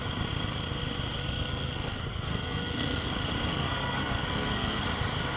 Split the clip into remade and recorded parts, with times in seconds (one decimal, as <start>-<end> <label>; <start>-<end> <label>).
0.0-1.2 recorded; 1.2-3.1 remade; 3.1-3.5 recorded; 3.5-4.8 remade; 4.8-5.4 recorded